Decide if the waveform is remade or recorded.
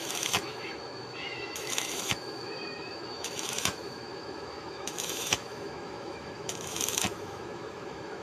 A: remade